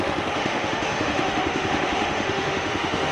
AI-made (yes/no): yes